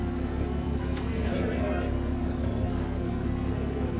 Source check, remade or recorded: remade